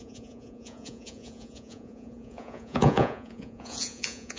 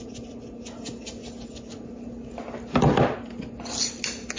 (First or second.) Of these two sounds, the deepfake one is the first